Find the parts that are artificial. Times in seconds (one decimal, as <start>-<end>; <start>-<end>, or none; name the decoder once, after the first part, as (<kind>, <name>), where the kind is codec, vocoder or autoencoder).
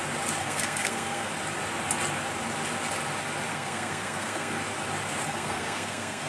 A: 0.4-1.3 (codec, SNAC); 3.5-4.6; 5.3-6.3